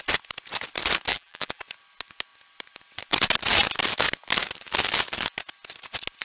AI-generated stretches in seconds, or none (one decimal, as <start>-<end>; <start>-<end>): 1.1-1.6

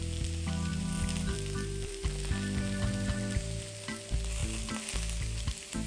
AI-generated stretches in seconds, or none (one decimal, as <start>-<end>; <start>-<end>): 0.7-1.9

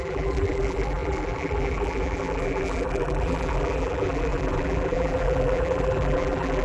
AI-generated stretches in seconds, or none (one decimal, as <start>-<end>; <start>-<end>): 0.0-6.6

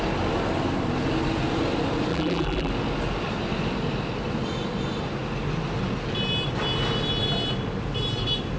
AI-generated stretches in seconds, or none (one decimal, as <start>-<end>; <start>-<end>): 2.1-2.7